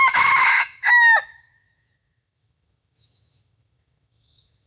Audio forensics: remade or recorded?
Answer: remade